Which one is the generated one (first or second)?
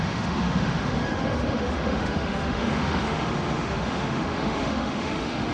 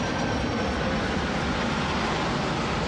first